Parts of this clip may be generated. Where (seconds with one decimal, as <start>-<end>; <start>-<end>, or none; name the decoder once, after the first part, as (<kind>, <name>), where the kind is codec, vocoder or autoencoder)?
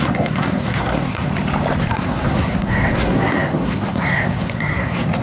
0.0-1.3 (codec, SNAC); 1.8-5.2